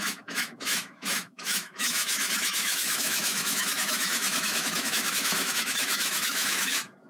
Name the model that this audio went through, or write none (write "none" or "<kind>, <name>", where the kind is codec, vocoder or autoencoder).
autoencoder, DAC-VAE